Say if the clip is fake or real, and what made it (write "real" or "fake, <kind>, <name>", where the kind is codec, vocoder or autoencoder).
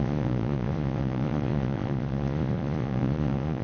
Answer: fake, vocoder, Vocos